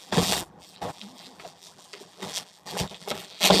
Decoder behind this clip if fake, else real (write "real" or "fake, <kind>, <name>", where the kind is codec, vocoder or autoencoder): fake, vocoder, BigVGAN v2